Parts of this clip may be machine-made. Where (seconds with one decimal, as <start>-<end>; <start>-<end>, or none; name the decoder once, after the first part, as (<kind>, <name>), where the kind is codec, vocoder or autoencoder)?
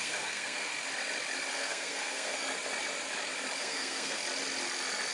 0.0-0.7 (codec, SNAC); 1.5-2.4; 3.6-4.2